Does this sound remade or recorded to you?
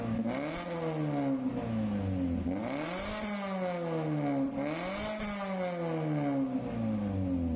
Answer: recorded